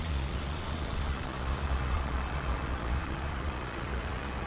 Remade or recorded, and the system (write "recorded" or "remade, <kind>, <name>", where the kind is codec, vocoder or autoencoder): remade, vocoder, Vocos